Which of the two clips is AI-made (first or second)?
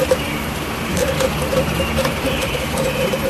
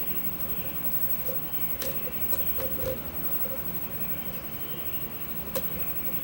first